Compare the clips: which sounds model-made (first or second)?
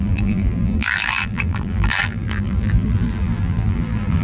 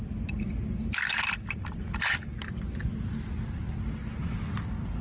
first